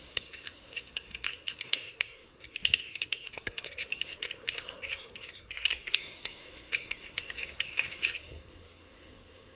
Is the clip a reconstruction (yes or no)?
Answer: yes